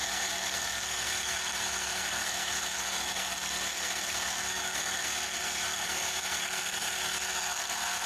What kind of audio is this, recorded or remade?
remade